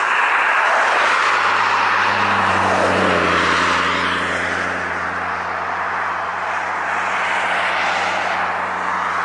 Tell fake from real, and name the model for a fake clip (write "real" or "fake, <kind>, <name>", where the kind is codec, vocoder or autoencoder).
real